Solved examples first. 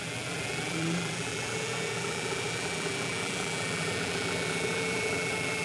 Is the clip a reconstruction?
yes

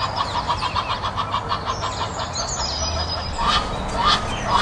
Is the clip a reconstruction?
no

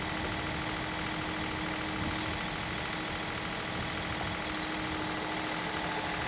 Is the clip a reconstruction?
no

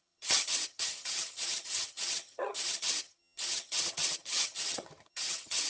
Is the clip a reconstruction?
yes